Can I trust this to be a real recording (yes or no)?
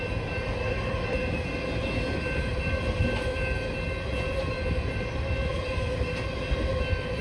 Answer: yes